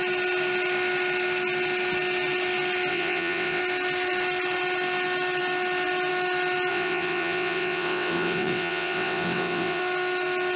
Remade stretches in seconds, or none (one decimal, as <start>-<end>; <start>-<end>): 2.9-3.6; 6.7-9.8